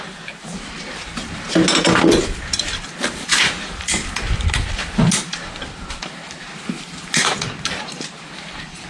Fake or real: fake